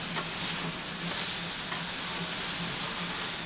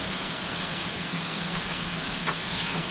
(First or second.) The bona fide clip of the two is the first